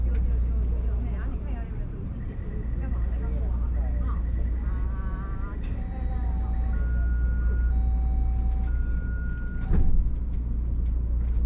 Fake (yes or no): no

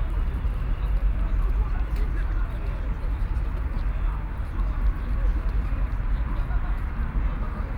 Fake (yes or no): no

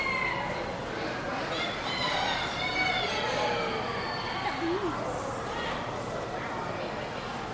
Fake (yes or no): no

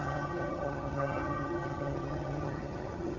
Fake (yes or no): yes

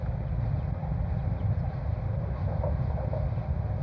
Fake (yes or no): no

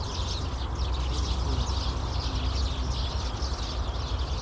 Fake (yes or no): no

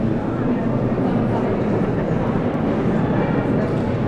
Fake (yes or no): no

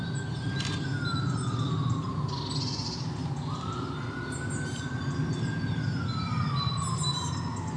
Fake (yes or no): no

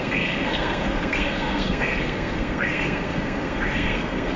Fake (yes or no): yes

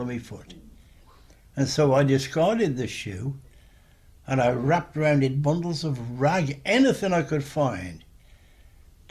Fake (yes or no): no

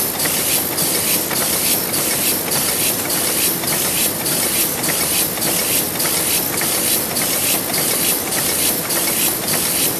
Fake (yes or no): no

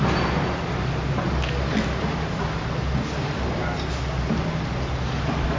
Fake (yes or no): no